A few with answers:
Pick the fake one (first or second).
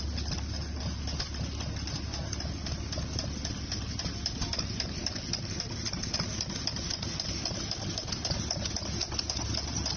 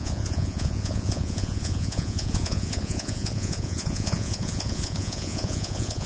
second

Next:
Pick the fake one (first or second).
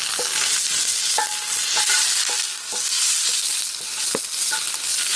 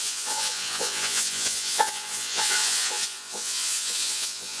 second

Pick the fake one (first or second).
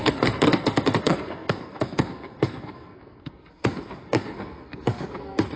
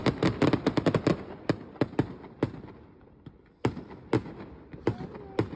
first